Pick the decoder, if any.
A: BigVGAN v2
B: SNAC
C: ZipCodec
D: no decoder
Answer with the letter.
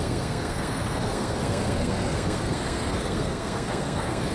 B